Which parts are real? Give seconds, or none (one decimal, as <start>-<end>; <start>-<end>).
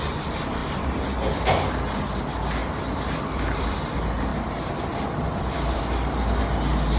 0.0-2.6; 3.9-4.3; 5.8-7.0